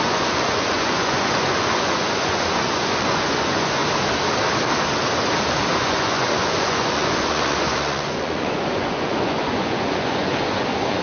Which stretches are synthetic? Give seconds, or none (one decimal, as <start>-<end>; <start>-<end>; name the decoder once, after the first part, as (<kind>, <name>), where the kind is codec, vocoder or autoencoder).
0.0-3.8 (vocoder, Vocos); 5.8-11.0